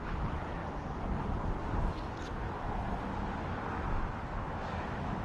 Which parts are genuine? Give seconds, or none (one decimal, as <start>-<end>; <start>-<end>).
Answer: 0.6-3.7